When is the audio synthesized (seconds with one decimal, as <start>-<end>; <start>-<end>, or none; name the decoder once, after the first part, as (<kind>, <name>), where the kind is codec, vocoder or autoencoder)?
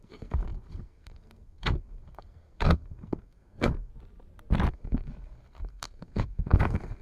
0.0-3.9 (codec, SNAC); 4.7-7.0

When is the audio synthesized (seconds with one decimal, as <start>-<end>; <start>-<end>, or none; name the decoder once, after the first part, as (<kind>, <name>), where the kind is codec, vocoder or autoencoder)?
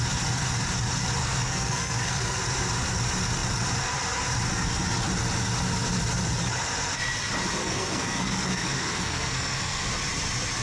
1.2-2.4 (codec, SNAC); 7.6-9.9